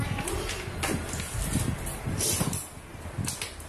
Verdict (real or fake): real